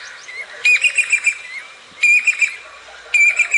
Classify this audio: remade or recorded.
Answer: recorded